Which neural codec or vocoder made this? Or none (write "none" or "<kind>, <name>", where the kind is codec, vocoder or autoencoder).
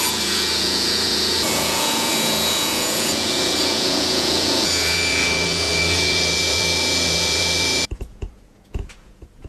vocoder, Vocos